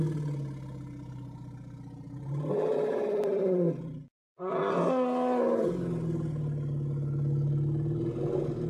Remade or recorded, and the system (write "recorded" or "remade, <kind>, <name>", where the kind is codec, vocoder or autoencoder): recorded